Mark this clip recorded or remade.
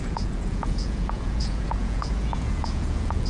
remade